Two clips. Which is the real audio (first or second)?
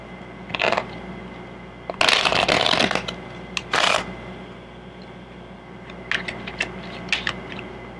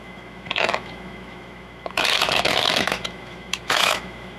first